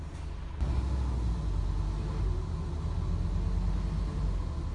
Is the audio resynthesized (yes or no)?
no